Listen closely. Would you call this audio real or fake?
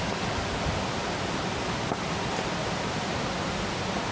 real